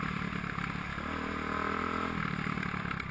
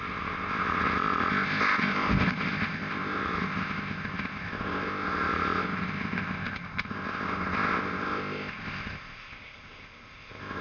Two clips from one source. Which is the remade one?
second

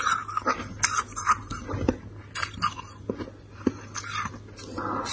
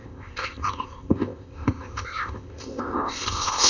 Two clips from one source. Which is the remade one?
second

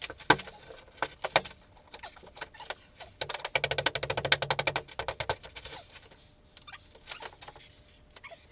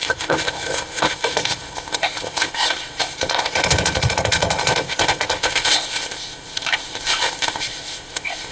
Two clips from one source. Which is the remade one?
second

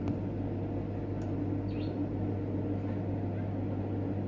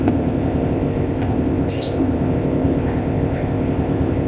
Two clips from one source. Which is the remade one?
second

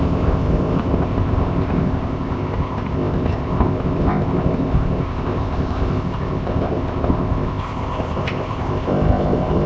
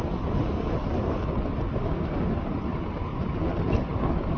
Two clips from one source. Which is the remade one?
first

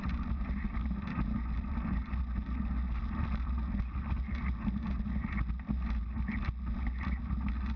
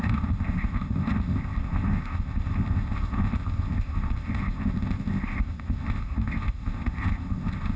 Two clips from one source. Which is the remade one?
second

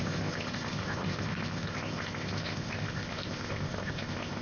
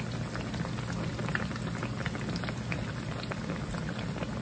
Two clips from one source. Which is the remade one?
first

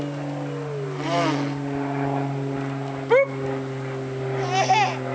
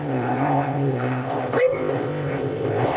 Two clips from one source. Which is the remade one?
second